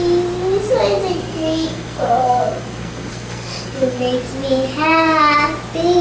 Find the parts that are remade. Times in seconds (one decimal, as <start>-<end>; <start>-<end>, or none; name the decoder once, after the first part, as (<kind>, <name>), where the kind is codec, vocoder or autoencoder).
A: 1.2-4.0 (codec, SNAC)